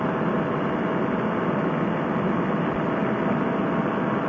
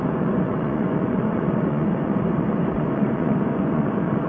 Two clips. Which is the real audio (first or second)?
first